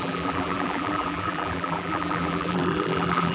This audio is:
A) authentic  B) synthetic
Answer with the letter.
B